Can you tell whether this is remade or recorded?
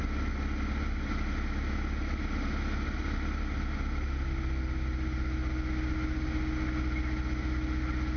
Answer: recorded